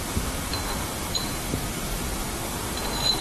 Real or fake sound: fake